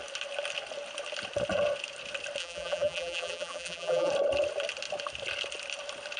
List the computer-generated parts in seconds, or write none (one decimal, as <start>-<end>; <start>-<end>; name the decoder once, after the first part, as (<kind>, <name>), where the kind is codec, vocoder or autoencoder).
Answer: 2.4-4.1 (vocoder, BigVGAN v2)